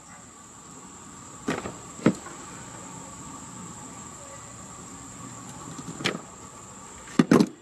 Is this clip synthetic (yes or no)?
no